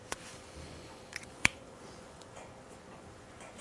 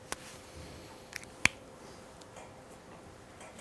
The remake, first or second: first